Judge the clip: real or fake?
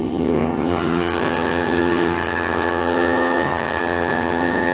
fake